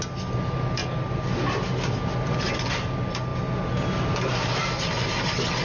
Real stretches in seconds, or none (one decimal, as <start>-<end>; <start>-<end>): 0.0-5.6